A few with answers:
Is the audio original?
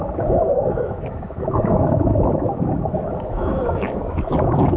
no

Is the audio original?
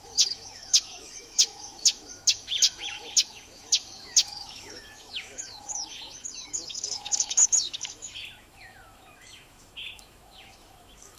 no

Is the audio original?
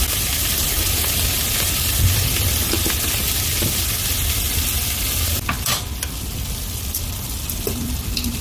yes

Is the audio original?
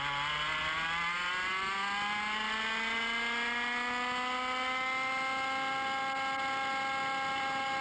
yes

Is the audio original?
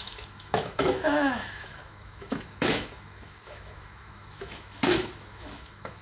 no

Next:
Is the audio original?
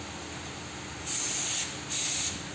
yes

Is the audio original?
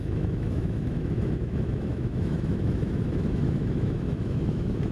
no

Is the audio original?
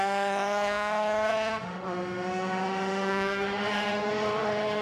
no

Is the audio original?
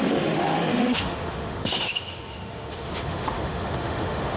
no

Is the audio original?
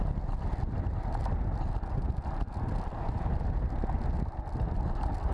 yes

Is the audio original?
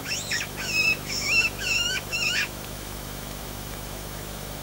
no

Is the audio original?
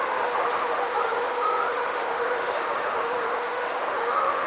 no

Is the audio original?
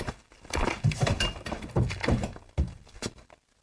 yes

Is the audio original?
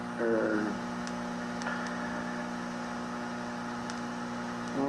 yes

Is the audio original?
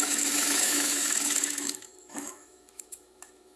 no